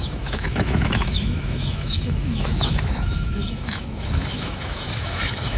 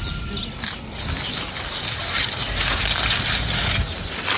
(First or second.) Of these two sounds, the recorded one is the second